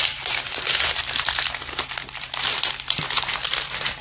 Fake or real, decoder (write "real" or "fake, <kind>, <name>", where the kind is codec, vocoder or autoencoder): real